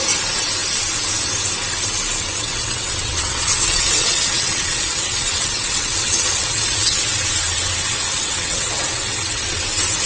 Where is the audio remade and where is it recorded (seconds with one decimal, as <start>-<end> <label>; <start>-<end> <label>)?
0.0-2.2 recorded; 2.2-7.0 remade; 7.0-8.1 recorded; 8.1-9.6 remade; 9.6-10.1 recorded